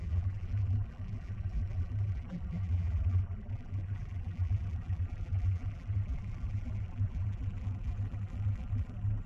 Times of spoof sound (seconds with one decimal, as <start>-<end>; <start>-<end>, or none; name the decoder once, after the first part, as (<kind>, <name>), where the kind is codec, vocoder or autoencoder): 0.0-9.3 (vocoder, BigVGAN v2)